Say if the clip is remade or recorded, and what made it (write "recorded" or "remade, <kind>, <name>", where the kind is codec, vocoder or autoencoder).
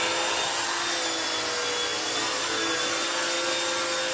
recorded